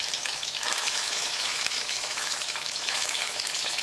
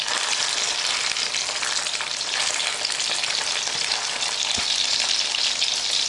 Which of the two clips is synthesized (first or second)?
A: first